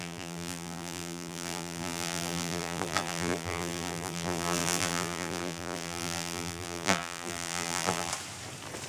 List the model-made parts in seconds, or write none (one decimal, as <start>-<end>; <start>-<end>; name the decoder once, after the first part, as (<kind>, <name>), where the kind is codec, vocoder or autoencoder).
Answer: 0.0-8.1 (vocoder, BigVGAN v2)